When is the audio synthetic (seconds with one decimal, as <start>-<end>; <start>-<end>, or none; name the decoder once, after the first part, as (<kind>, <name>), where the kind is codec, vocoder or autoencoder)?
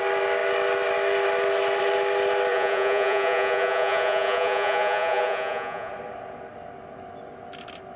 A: 2.5-5.9 (vocoder, Vocos)